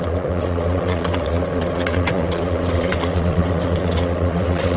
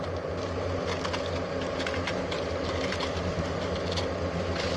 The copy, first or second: first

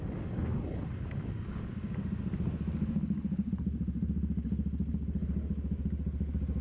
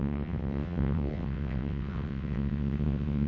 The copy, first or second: second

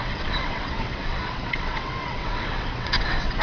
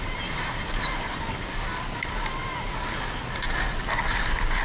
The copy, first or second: first